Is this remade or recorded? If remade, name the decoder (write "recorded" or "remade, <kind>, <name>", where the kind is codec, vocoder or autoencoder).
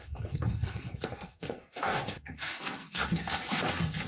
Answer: remade, codec, SNAC